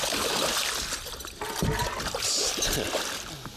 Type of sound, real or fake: real